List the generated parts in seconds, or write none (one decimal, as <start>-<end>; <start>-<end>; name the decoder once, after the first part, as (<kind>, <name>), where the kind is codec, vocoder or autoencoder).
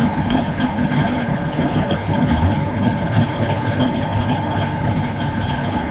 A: 0.0-5.9 (codec, HILCodec)